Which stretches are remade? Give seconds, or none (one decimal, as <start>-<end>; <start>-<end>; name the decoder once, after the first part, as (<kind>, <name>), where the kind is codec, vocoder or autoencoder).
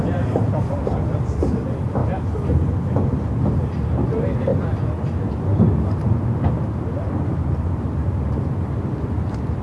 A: none